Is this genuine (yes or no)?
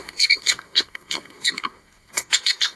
no